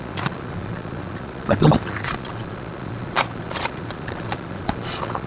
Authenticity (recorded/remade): remade